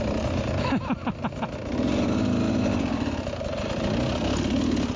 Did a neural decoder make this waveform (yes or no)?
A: no